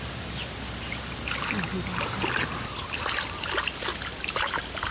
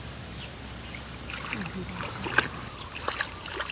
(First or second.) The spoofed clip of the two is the first